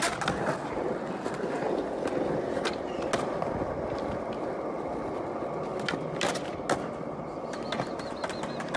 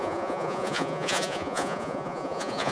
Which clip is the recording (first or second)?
first